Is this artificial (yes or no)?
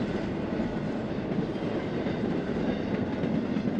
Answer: no